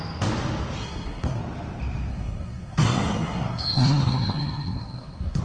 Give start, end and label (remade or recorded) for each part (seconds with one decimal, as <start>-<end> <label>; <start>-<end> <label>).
0.0-0.8 recorded; 0.8-1.4 remade; 1.4-2.1 recorded; 2.1-5.4 remade